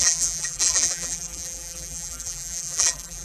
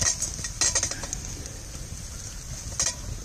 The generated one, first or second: first